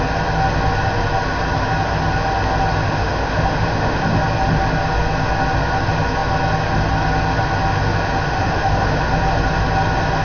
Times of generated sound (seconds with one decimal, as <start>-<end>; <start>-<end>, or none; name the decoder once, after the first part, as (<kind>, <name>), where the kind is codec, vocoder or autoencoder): 2.8-4.1 (autoencoder, DAC-VAE); 8.3-9.1

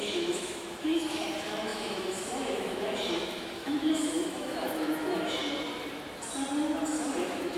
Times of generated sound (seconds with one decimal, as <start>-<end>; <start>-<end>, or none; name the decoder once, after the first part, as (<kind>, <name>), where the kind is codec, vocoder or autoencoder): 0.0-5.4 (autoencoder, DAC-VAE); 7.1-7.6